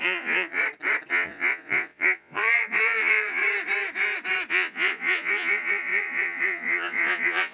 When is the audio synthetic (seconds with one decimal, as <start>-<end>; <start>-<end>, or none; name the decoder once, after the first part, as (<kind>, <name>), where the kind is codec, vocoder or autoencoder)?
0.0-0.6 (vocoder, Vocos); 1.1-3.4; 4.5-7.5